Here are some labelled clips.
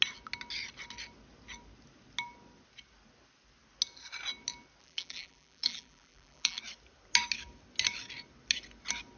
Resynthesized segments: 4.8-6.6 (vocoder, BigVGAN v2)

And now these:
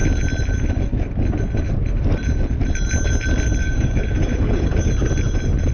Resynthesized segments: 3.6-4.9 (codec, DAC)

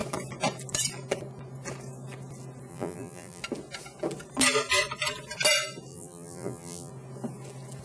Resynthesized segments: 2.7-3.4 (vocoder, BigVGAN v2); 5.9-6.9